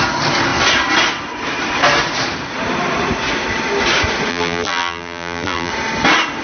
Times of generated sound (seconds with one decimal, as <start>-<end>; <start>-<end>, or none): 4.3-5.7